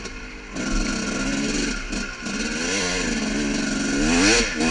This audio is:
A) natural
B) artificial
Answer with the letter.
A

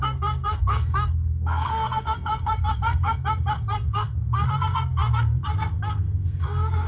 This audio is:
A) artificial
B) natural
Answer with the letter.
A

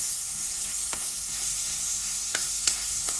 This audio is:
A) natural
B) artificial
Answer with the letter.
B